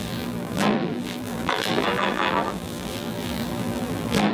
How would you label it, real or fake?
fake